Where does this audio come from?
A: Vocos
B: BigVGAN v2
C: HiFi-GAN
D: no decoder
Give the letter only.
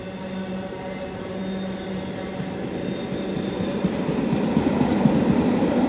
D